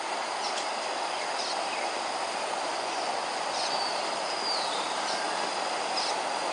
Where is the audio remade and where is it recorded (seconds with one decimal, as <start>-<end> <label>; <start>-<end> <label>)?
0.0-2.7 recorded; 2.7-3.8 remade; 3.8-6.5 recorded